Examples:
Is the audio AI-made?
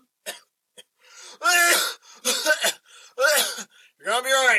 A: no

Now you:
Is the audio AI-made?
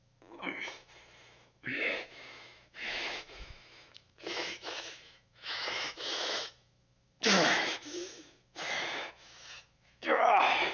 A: yes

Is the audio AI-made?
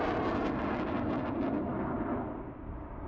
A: no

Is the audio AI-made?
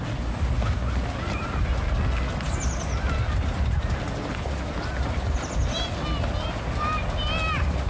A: no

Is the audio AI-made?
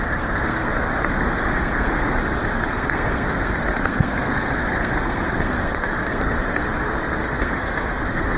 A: yes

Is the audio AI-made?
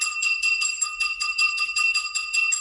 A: yes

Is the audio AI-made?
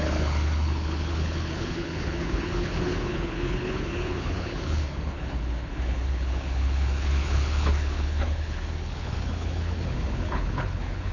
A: yes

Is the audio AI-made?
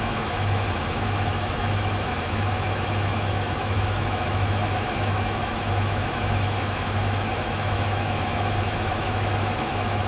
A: yes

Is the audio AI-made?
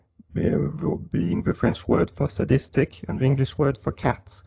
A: yes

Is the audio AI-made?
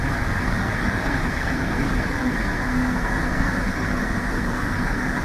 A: yes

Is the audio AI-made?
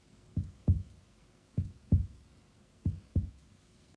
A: yes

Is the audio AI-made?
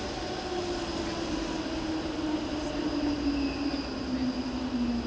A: no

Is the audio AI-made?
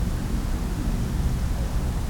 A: no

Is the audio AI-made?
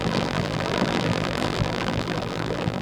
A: yes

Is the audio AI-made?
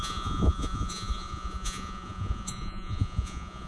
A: yes